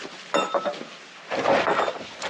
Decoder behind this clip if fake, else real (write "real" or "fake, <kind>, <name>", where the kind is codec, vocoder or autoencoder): real